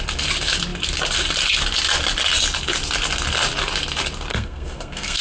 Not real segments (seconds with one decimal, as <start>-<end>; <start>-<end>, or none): 4.3-5.2